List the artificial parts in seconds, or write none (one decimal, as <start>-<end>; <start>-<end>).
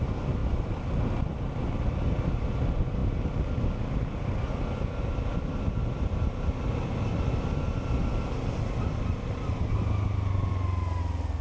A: none